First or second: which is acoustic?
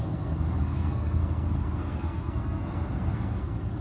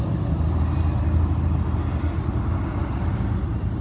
second